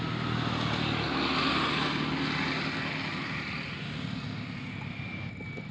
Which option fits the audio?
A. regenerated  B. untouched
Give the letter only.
B